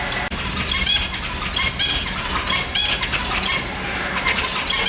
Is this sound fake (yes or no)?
no